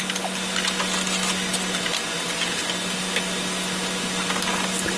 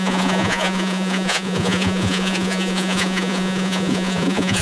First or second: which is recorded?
first